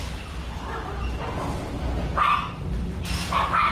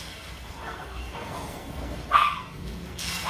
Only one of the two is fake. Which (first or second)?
second